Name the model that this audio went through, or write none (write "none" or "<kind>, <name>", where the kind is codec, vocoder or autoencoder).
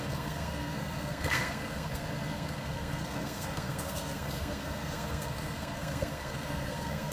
codec, SNAC